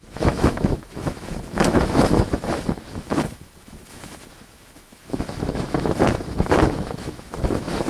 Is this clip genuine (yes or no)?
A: no